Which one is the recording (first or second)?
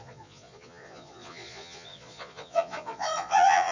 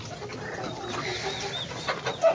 second